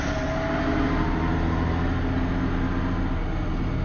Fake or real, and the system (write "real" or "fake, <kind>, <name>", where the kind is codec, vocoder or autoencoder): real